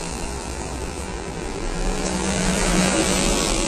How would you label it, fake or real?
fake